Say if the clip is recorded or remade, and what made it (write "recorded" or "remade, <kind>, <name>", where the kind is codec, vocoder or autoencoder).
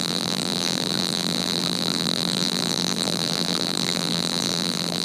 remade, vocoder, BigVGAN v2